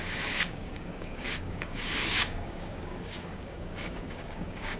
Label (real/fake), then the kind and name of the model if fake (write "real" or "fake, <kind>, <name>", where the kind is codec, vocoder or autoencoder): fake, codec, DAC